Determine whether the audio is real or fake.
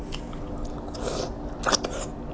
real